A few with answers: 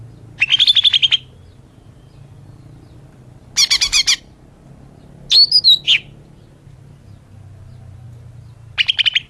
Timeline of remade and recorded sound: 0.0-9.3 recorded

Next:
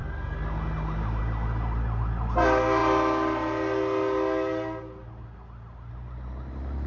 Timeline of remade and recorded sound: 0.0-6.9 recorded

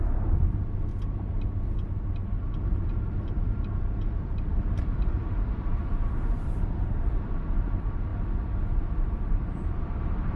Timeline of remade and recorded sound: 0.0-0.9 remade; 0.9-2.9 recorded; 2.9-8.1 remade; 8.1-8.9 recorded; 8.9-10.4 remade

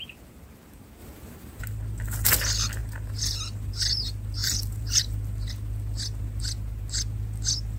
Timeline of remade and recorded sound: 0.0-1.0 recorded; 1.0-1.6 remade; 1.6-4.4 recorded; 4.4-5.0 remade; 5.0-7.8 recorded

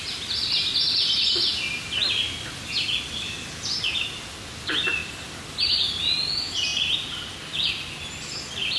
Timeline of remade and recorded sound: 0.0-1.5 remade; 1.5-4.5 recorded; 4.5-8.8 remade

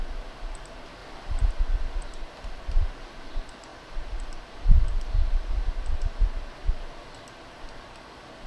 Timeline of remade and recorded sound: 0.0-1.0 recorded; 1.0-1.5 remade; 1.5-3.7 recorded; 3.7-5.5 remade; 5.5-8.5 recorded